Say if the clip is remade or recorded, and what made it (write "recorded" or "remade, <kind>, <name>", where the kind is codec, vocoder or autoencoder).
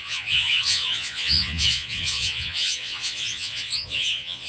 remade, vocoder, Vocos